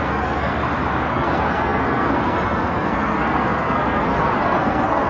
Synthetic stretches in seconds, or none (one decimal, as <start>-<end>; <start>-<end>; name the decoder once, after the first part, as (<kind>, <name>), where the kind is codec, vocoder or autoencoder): 0.0-0.6 (codec, SNAC); 1.1-5.1